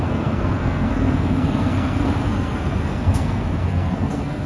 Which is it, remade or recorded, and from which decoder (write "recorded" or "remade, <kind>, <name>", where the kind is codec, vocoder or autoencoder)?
remade, codec, SNAC